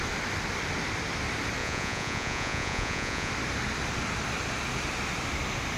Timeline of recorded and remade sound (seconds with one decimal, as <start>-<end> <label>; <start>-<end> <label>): 0.0-1.6 recorded; 1.6-3.3 remade; 3.3-5.8 recorded